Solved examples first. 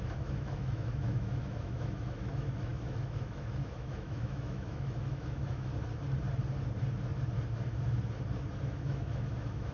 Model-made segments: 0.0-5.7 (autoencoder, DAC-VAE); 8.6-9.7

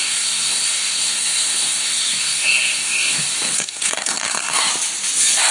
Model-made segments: 0.0-4.7 (codec, SNAC)

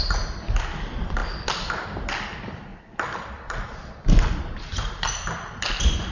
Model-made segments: none

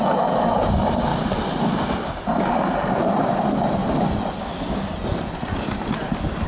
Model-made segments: none

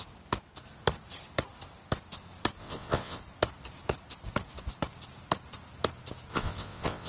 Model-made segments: 2.6-3.2 (vocoder, WaveNeXt); 6.3-7.1